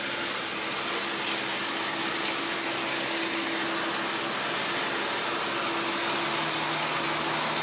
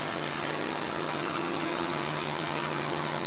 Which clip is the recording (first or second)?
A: first